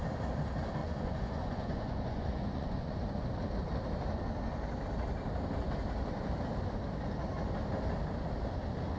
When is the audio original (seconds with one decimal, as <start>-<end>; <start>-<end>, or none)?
0.0-0.8; 3.0-9.0